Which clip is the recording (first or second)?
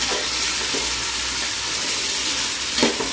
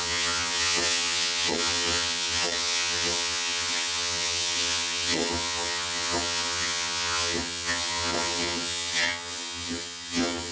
first